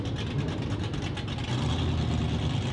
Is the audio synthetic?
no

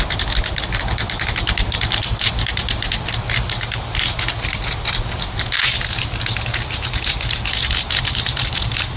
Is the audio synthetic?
no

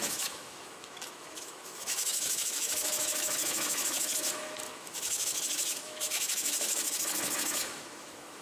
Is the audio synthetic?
yes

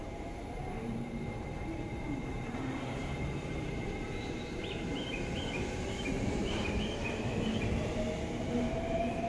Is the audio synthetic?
yes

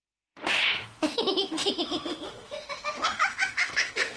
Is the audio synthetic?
yes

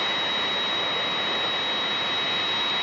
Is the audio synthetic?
no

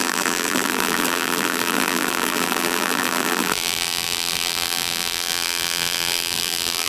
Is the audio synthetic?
yes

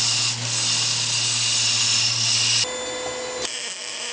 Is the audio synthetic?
no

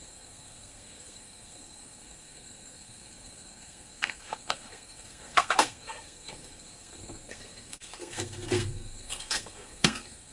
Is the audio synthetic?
yes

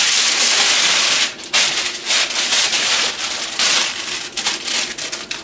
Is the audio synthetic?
no